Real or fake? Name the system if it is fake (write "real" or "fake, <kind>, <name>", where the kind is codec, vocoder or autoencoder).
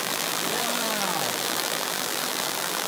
fake, vocoder, BigVGAN v2